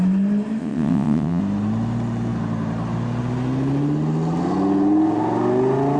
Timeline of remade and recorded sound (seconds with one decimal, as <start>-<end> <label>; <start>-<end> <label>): 0.0-0.6 recorded; 0.6-1.4 remade; 1.4-6.0 recorded